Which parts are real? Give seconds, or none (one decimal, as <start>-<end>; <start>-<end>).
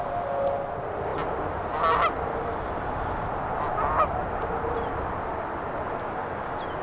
0.0-6.8